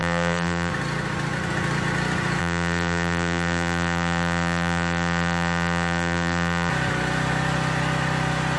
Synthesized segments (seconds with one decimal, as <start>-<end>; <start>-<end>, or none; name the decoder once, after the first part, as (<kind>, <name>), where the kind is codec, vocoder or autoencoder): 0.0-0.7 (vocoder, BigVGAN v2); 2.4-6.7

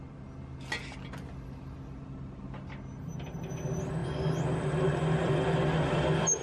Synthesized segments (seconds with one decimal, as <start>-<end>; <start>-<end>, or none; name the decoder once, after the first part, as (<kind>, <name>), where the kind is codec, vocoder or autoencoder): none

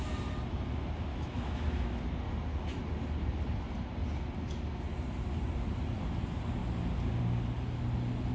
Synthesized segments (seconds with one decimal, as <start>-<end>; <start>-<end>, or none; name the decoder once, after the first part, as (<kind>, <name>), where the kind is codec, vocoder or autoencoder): 1.1-2.0 (autoencoder, DAC-VAE)